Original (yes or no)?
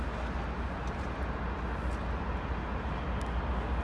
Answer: yes